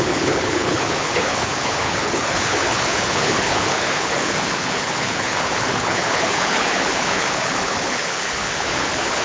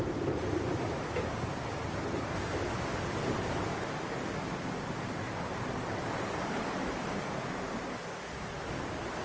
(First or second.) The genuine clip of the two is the second